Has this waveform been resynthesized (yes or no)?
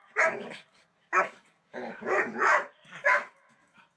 yes